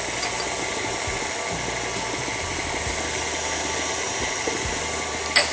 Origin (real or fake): real